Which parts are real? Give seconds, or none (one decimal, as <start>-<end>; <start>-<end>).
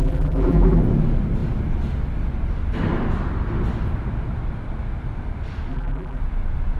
0.8-5.7; 6.2-6.8